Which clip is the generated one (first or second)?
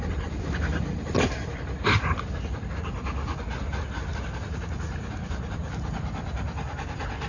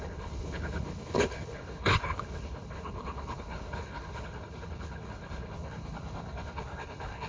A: second